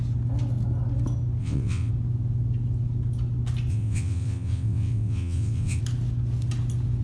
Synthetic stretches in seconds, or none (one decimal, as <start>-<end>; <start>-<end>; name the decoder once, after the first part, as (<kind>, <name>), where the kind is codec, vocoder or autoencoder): 1.4-1.9 (vocoder, WaveNeXt); 3.7-5.8